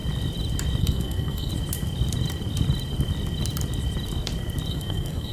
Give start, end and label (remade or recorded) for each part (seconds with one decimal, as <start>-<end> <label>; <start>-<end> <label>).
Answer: 0.0-0.8 recorded; 0.8-1.5 remade; 1.5-4.7 recorded; 4.7-5.3 remade